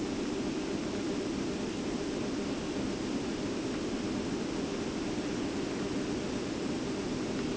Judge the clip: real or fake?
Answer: real